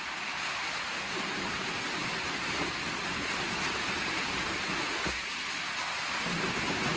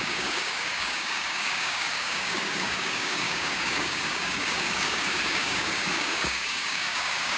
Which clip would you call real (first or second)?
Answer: first